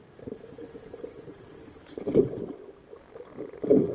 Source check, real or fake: real